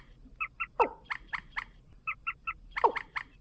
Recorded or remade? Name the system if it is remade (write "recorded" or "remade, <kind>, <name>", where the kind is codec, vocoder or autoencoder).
recorded